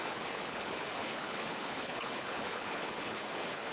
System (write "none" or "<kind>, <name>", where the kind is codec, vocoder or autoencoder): codec, HILCodec